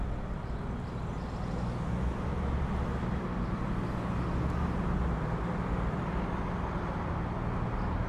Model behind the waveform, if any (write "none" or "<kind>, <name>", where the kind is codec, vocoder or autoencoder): none